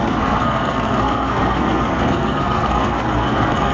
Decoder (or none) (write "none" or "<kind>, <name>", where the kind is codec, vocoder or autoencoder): codec, SNAC